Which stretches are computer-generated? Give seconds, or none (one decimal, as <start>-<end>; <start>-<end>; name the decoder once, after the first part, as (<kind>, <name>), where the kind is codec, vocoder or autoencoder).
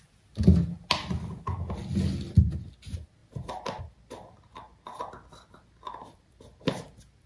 none